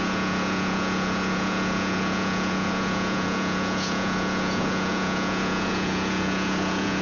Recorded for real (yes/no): no